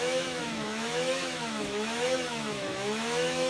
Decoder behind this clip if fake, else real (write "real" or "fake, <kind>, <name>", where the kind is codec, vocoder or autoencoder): fake, autoencoder, DAC-VAE